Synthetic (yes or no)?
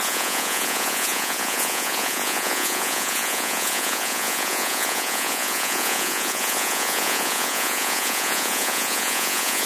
yes